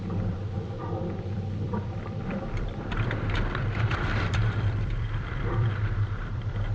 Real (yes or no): no